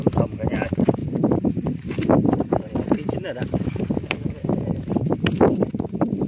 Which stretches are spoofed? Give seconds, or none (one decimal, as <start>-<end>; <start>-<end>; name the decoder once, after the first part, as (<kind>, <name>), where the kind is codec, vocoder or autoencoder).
0.0-6.3 (vocoder, BigVGAN v2)